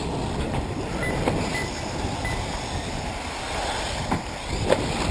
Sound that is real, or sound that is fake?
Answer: real